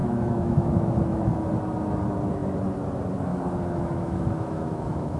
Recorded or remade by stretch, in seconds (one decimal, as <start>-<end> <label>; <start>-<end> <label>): 0.0-1.3 remade; 1.3-3.3 recorded; 3.3-5.2 remade